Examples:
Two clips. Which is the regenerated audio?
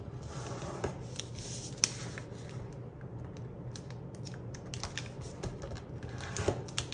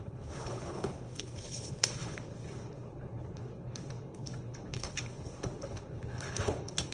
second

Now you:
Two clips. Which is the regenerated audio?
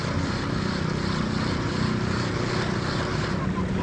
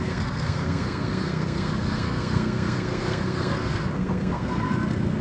second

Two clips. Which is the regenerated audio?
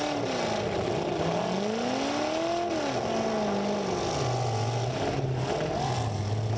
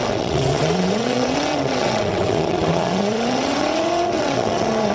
second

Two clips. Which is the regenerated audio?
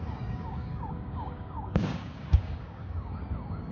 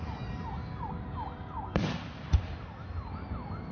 first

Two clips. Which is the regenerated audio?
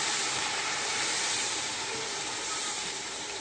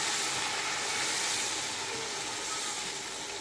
first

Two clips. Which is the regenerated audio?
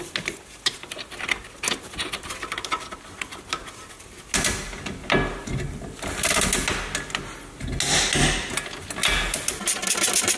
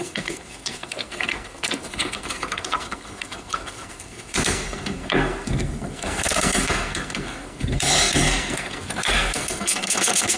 second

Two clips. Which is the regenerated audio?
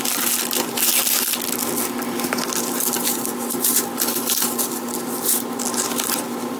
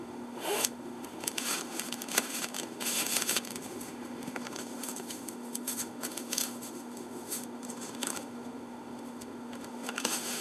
second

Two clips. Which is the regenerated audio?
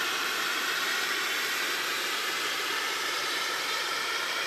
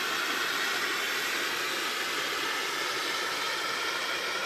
first